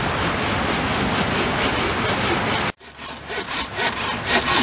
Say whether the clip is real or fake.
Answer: real